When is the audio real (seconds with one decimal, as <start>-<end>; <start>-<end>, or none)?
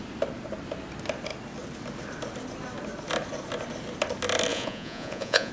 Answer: 0.0-4.5